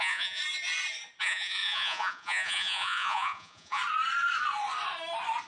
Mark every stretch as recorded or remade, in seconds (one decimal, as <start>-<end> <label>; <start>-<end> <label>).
0.0-0.4 remade; 0.4-1.2 recorded; 1.2-3.8 remade; 3.8-5.5 recorded